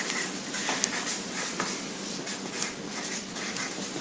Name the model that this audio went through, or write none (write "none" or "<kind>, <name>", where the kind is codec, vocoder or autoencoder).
none